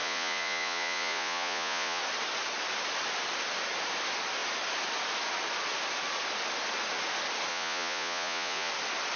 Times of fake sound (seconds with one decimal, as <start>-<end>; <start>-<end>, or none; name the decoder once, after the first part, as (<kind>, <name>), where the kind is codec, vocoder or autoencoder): 0.0-2.0 (vocoder, Vocos); 7.5-8.7